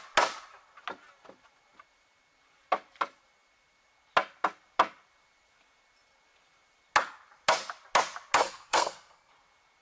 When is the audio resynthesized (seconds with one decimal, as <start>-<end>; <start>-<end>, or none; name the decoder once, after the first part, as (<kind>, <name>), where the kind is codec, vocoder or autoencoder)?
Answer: 8.4-9.3 (codec, SNAC)